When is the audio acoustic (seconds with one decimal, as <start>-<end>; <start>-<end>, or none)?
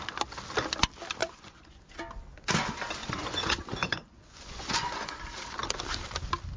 0.0-1.2; 1.8-3.0; 5.2-6.6